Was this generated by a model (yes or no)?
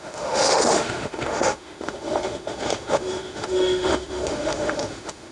yes